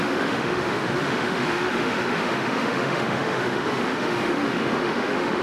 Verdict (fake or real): fake